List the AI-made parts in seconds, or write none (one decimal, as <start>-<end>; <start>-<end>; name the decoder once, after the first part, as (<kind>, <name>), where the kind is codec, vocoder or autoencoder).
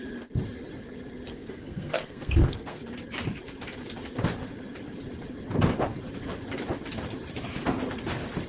1.3-2.8 (codec, SNAC)